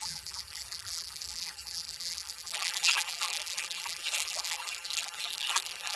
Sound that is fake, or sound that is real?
fake